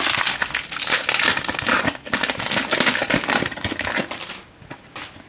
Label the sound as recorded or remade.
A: recorded